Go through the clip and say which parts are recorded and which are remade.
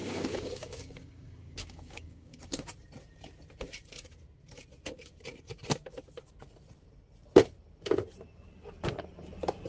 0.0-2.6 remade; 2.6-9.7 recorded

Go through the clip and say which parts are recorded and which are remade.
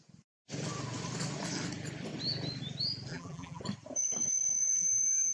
0.0-3.1 recorded; 3.1-3.6 remade; 3.6-4.6 recorded; 4.6-5.3 remade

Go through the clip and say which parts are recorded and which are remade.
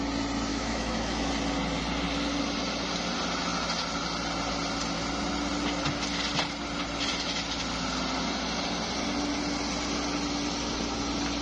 0.0-0.5 recorded; 0.5-1.3 remade; 1.3-11.4 recorded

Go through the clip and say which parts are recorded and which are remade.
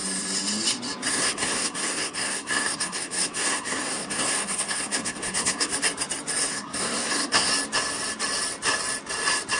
0.0-1.1 recorded; 1.1-5.7 remade; 5.7-6.5 recorded; 6.5-7.5 remade; 7.5-9.6 recorded